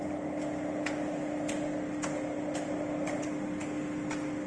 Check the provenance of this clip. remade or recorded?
recorded